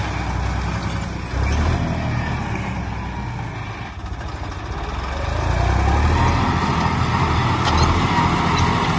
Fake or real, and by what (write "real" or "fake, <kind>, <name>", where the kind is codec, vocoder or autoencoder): real